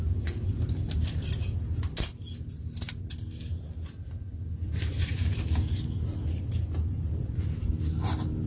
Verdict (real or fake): real